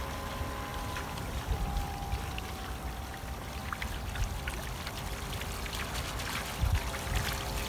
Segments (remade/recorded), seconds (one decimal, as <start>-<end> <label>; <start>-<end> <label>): 0.0-0.7 recorded; 0.7-1.3 remade; 1.3-7.7 recorded